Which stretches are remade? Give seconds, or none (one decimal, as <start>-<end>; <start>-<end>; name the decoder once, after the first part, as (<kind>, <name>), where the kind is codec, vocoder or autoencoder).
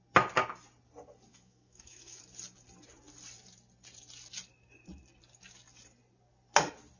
1.3-2.2 (autoencoder, DAC-VAE)